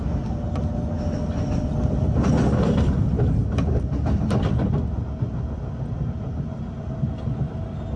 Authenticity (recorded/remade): recorded